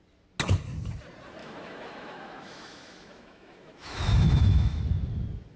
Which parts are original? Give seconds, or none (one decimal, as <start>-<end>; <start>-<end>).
0.0-1.4; 4.8-5.6